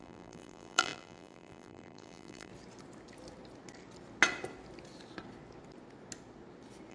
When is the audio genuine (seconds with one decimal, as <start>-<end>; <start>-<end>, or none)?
2.5-6.9